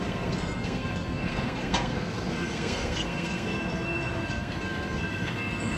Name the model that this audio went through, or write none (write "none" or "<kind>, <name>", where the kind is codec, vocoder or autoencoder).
codec, SNAC